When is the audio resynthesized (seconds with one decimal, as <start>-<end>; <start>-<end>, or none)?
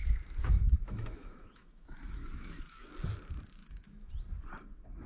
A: 0.0-2.9; 3.6-4.1